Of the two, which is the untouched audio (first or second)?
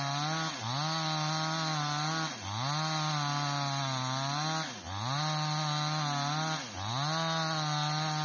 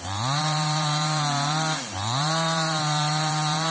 first